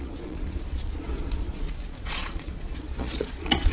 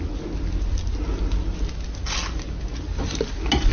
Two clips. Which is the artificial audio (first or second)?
first